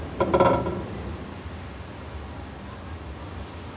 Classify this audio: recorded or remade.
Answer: recorded